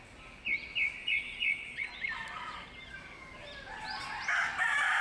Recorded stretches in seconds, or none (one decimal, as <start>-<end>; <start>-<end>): 0.0-1.0; 1.9-5.0